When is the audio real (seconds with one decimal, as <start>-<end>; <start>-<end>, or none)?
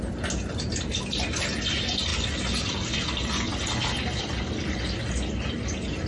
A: 0.0-6.1